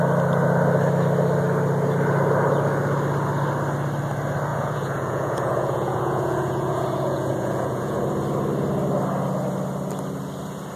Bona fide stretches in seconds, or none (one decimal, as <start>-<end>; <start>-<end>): 0.0-4.5; 8.0-10.8